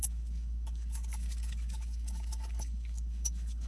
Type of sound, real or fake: fake